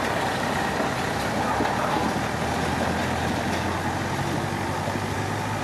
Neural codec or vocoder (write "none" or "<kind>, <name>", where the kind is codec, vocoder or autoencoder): none